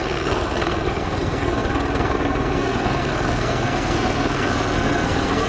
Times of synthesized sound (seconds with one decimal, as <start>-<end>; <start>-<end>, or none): 0.0-5.5